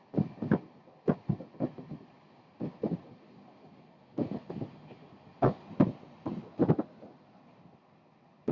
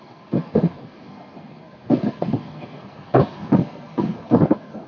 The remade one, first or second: second